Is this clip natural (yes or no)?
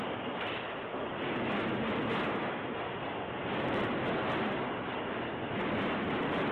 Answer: yes